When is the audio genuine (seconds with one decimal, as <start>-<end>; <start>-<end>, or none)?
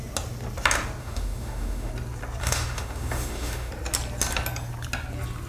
0.0-1.0; 1.9-2.4; 3.7-5.5